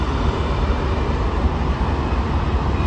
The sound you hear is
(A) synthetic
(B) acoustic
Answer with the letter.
B